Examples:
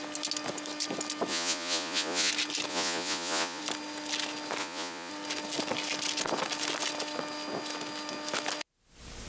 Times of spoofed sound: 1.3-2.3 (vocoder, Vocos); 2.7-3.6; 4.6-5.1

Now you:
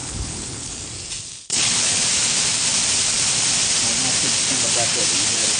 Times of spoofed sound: 0.0-0.7 (codec, HILCodec); 1.5-2.0